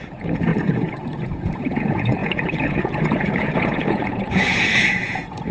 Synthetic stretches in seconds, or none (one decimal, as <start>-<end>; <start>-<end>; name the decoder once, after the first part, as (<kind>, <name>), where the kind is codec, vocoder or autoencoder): 0.0-5.5 (vocoder, Vocos)